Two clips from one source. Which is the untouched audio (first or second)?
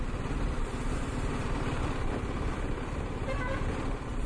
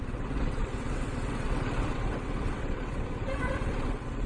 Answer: first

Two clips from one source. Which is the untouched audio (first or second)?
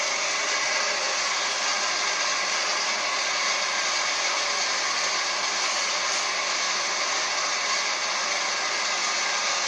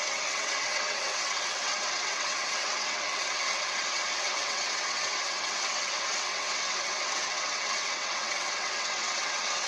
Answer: first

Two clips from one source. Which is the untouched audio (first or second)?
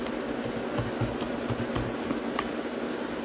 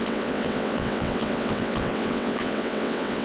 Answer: first